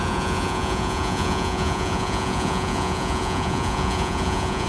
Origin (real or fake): fake